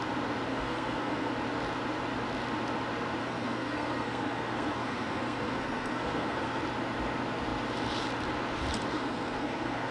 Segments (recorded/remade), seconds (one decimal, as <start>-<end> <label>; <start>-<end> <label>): 0.0-0.5 recorded; 0.5-1.3 remade; 1.3-3.2 recorded; 3.2-6.6 remade; 6.6-8.9 recorded; 8.9-9.9 remade